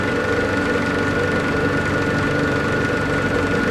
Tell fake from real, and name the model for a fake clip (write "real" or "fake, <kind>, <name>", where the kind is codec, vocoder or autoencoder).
real